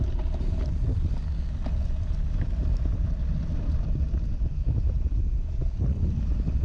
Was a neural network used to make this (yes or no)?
yes